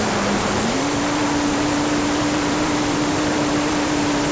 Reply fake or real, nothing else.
fake